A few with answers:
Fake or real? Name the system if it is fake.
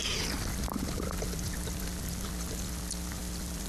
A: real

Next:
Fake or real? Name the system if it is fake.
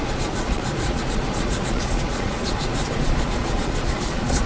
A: fake, vocoder, Vocos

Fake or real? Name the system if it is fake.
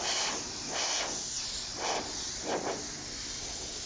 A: real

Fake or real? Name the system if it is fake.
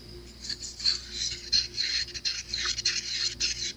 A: real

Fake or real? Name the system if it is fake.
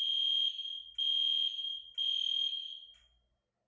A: real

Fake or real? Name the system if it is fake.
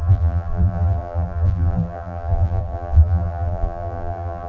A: fake, vocoder, BigVGAN v2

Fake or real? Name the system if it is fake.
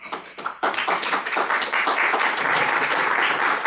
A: real